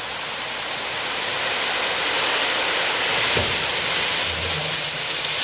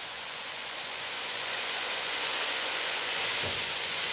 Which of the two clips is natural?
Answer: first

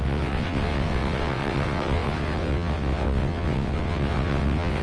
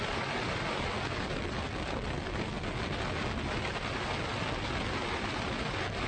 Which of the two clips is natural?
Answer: second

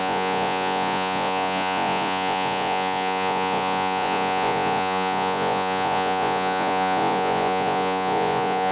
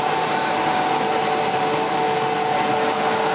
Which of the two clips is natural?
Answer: second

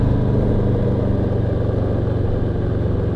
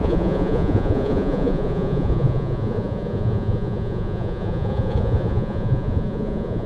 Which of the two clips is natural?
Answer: first